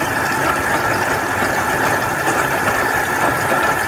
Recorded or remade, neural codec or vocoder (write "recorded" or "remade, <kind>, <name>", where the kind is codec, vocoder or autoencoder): recorded